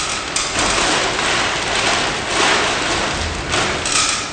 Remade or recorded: recorded